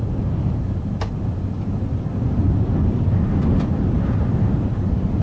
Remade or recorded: recorded